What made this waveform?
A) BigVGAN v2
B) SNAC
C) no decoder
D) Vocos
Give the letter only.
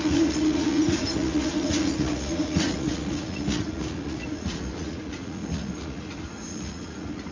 D